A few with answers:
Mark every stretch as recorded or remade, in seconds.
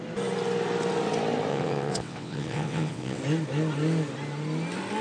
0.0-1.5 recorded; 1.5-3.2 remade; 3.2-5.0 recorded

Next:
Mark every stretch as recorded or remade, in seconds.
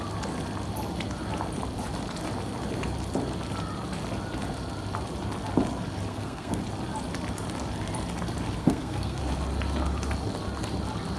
0.0-6.1 recorded; 6.1-6.6 remade; 6.6-8.6 recorded; 8.6-9.2 remade; 9.2-11.2 recorded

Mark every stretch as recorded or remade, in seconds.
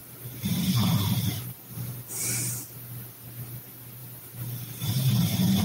0.0-2.2 remade; 2.2-4.0 recorded; 4.0-5.6 remade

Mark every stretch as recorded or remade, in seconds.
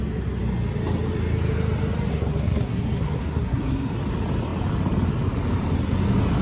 0.0-2.1 recorded; 2.1-4.0 remade; 4.0-6.4 recorded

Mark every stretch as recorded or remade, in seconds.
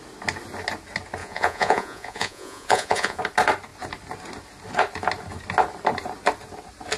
0.0-1.2 recorded; 1.2-3.2 remade; 3.2-7.0 recorded